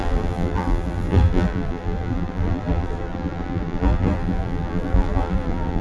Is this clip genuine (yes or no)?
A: no